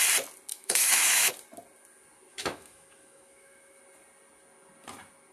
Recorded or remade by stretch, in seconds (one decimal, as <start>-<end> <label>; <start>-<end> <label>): 0.0-0.5 recorded; 0.5-1.3 remade; 1.3-2.3 recorded; 2.3-3.8 remade; 3.8-5.3 recorded